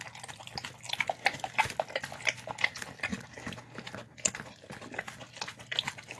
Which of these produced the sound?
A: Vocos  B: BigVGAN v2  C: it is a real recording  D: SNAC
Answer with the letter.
C